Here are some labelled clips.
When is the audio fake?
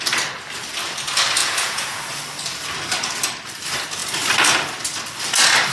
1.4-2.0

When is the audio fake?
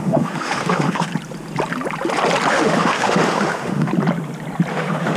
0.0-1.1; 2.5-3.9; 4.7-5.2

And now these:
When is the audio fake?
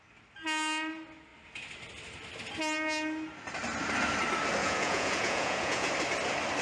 4.6-5.9